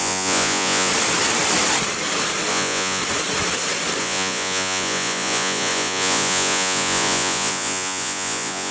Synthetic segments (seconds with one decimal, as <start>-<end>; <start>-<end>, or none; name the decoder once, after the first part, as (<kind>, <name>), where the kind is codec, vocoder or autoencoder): 0.0-0.9 (vocoder, Vocos); 2.5-3.0; 4.0-8.7